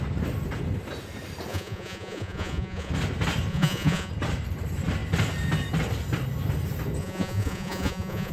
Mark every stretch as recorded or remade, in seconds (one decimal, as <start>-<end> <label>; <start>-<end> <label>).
0.0-1.5 recorded; 1.5-2.9 remade; 2.9-3.5 recorded; 3.5-4.1 remade; 4.1-7.0 recorded; 7.0-8.3 remade